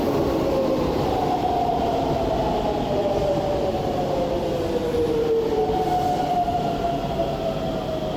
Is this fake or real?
real